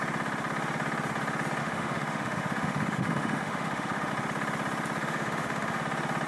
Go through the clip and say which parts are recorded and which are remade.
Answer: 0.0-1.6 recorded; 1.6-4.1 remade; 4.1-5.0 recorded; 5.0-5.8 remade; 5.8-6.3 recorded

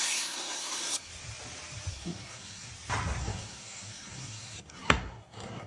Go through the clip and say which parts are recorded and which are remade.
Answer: 0.0-1.1 remade; 1.1-1.9 recorded; 1.9-2.7 remade; 2.7-3.2 recorded; 3.2-5.7 remade